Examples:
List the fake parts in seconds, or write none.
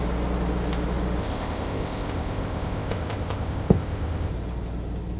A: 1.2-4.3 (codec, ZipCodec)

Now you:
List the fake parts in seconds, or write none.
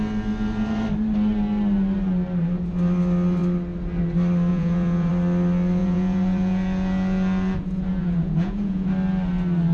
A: 4.5-5.1 (vocoder, Vocos); 5.8-8.9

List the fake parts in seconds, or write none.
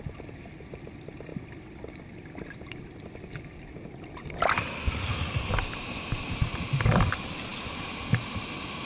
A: none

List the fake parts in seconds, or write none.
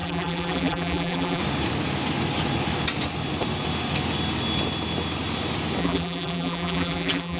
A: 0.0-1.4 (vocoder, BigVGAN v2); 5.8-7.4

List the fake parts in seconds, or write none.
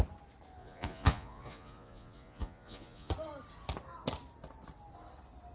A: 0.6-3.1 (vocoder, Vocos)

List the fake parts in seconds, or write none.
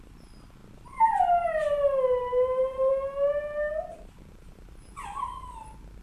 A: 3.9-5.2 (vocoder, BigVGAN v2)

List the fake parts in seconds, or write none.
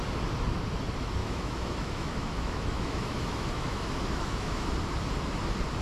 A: 1.2-4.7 (autoencoder, DAC-VAE)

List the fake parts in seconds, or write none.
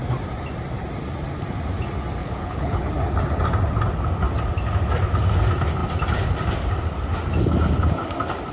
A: 2.2-2.9 (codec, HILCodec)